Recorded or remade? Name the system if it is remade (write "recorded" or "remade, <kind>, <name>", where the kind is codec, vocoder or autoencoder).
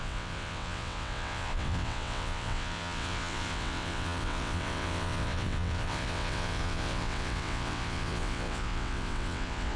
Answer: remade, vocoder, WaveNeXt